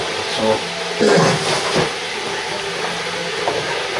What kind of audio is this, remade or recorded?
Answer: recorded